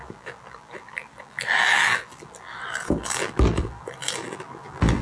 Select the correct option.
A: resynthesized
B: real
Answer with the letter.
A